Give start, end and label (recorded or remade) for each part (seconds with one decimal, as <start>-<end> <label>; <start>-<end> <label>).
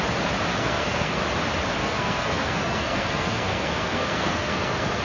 0.0-0.5 recorded; 0.5-1.2 remade; 1.2-1.8 recorded; 1.8-5.0 remade